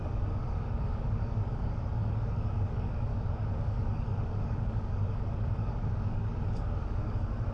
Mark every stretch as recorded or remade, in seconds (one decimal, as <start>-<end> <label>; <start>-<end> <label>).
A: 0.0-7.5 remade